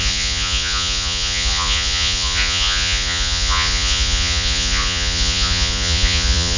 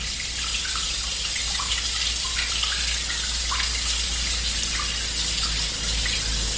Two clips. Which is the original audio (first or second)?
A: second